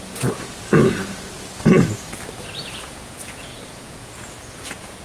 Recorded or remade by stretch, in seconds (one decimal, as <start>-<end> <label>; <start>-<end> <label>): 0.0-0.7 remade; 0.7-2.8 recorded; 2.8-5.0 remade